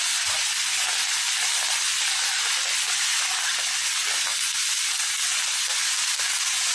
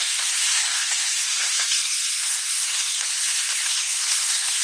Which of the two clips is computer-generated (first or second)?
second